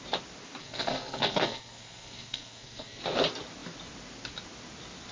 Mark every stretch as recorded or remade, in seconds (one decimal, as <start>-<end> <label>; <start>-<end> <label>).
0.0-0.6 recorded; 0.6-3.0 remade; 3.0-5.1 recorded